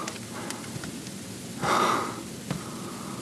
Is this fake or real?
real